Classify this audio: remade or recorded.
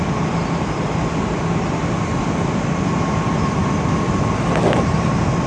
recorded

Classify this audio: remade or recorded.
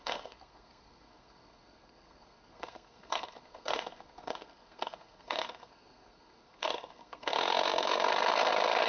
remade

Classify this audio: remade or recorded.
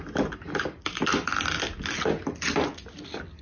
recorded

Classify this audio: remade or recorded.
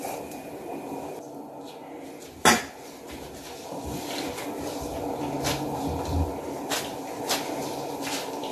recorded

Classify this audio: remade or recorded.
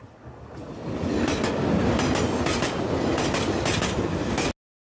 recorded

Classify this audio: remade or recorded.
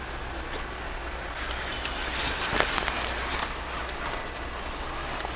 recorded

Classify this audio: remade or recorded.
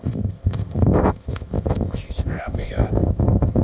remade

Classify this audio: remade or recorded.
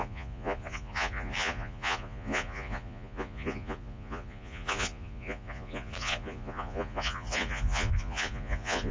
remade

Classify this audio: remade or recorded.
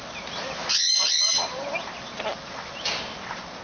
recorded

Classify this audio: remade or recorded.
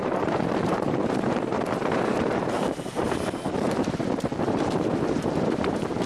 remade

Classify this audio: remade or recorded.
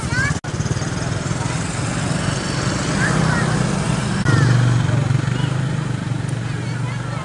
recorded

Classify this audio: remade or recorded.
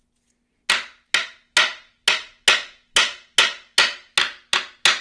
recorded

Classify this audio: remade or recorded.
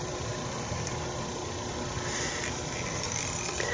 recorded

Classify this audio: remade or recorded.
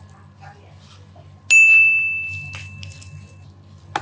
recorded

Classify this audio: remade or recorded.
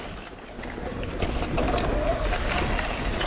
recorded